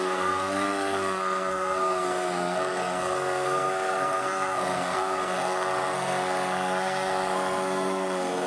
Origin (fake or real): fake